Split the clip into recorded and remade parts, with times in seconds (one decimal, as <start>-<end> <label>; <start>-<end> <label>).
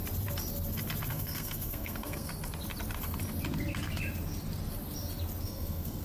0.0-1.1 recorded; 1.1-2.3 remade; 2.3-5.4 recorded; 5.4-6.0 remade